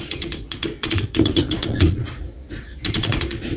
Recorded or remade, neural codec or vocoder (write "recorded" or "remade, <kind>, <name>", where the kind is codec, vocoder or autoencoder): remade, vocoder, Vocos